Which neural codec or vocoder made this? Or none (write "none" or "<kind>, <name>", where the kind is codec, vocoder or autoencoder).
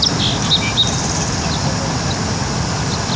none